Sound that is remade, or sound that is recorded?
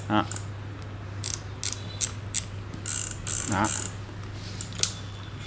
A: recorded